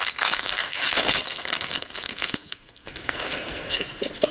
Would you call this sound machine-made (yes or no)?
yes